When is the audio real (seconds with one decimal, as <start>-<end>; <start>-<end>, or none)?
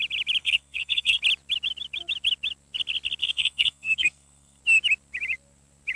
0.0-0.4; 1.2-3.2; 4.6-6.0